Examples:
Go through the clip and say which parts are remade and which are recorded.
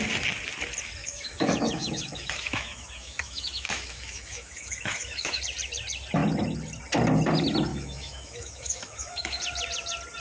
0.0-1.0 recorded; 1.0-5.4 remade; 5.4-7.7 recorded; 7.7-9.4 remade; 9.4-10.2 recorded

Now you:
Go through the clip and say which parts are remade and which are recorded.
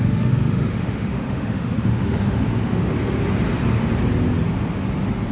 0.0-2.9 remade; 2.9-5.3 recorded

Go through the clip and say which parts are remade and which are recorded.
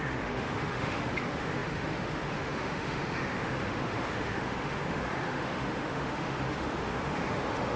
0.0-7.8 remade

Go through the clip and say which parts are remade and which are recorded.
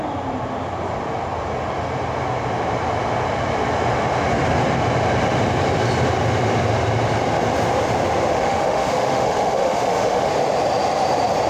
0.0-8.3 recorded; 8.3-10.3 remade; 10.3-11.5 recorded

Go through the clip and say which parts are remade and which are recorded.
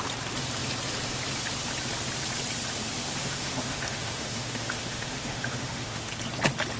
0.0-3.2 recorded; 3.2-6.1 remade; 6.1-6.8 recorded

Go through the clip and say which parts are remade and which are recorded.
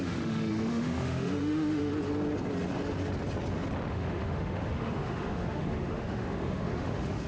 0.0-1.9 remade; 1.9-3.9 recorded; 3.9-7.3 remade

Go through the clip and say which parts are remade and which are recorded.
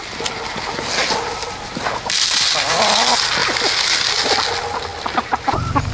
0.0-5.9 recorded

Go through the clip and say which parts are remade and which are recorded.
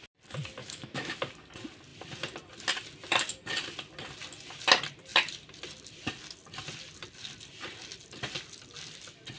0.0-0.6 recorded; 0.6-1.1 remade; 1.1-9.4 recorded